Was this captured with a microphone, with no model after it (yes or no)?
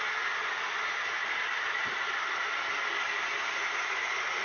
yes